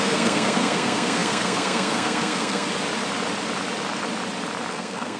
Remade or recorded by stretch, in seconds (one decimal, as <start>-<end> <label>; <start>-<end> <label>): 0.0-2.7 remade; 2.7-4.7 recorded; 4.7-5.2 remade